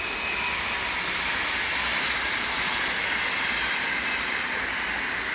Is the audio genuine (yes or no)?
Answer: yes